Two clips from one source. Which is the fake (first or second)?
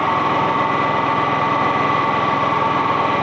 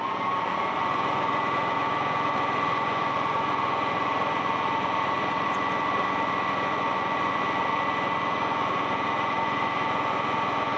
second